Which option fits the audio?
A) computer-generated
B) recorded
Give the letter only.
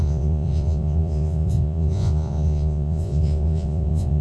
A